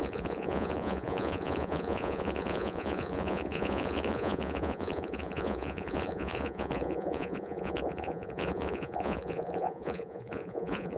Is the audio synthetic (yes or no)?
yes